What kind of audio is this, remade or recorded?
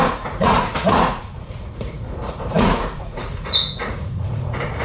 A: remade